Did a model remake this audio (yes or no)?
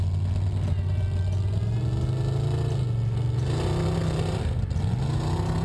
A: no